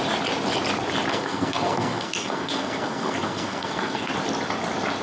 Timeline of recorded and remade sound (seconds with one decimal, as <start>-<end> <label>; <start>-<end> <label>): 0.0-1.1 recorded; 1.1-4.1 remade; 4.1-5.0 recorded